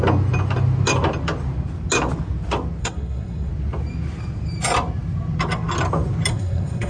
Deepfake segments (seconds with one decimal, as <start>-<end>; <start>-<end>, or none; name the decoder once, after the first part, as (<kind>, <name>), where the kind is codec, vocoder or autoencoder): 2.8-3.5 (codec, SNAC); 6.3-6.9

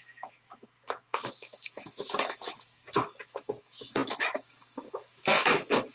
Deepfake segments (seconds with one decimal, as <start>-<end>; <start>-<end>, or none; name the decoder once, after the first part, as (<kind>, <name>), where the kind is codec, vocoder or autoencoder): 0.0-5.9 (autoencoder, DAC-VAE)

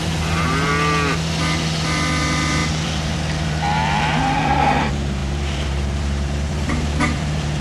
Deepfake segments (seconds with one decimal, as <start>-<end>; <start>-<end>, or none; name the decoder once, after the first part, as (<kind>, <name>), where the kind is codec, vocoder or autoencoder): 0.0-0.7 (vocoder, BigVGAN v2); 2.2-7.6